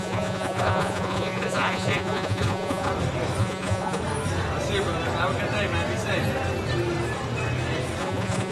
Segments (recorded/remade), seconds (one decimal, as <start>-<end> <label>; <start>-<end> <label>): 0.0-2.9 remade; 2.9-3.4 recorded; 3.4-4.0 remade; 4.0-8.0 recorded; 8.0-8.5 remade